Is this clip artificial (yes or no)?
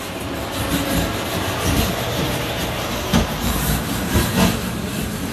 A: no